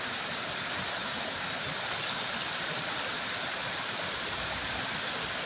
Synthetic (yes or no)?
no